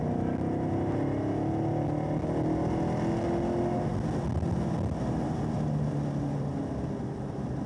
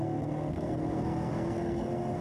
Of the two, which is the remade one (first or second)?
second